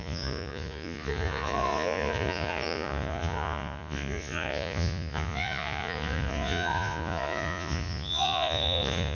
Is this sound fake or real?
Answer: fake